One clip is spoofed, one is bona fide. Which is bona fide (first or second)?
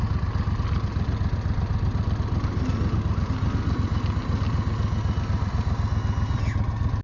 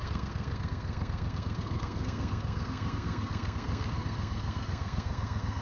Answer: first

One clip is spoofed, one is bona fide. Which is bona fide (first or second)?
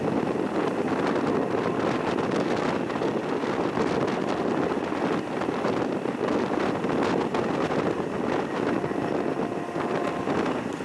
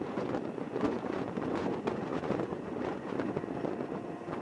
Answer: first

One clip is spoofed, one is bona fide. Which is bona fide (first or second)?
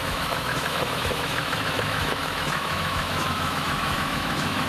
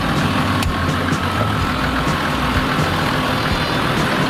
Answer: second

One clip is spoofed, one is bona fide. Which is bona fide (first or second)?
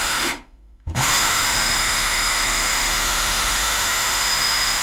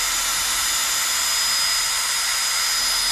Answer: second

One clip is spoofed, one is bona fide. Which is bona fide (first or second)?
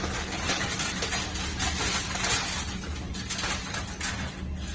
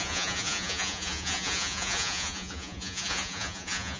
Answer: first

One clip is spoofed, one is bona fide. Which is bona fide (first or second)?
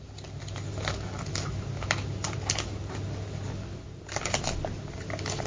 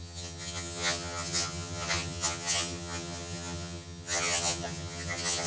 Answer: first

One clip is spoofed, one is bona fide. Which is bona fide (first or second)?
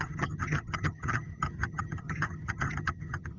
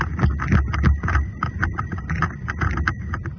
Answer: second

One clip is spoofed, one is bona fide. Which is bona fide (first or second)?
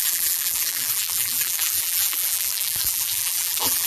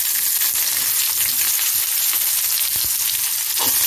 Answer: second